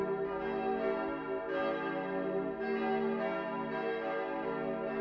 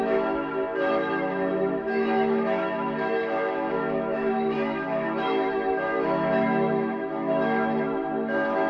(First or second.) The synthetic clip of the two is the second